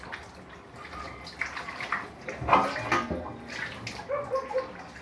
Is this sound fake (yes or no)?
no